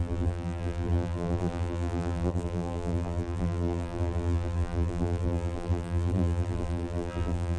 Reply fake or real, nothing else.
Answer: fake